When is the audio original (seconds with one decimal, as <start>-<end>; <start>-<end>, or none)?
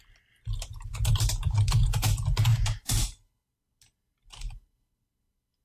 0.0-0.7; 1.9-2.5; 3.3-5.6